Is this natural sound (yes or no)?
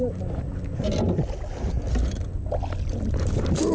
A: yes